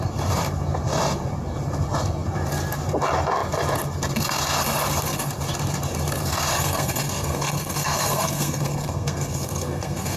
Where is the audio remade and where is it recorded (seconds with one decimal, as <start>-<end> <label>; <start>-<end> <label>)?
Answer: 0.0-6.5 recorded; 6.5-10.2 remade